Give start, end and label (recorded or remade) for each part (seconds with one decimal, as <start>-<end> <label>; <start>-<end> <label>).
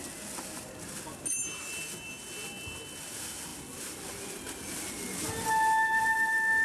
0.0-6.6 recorded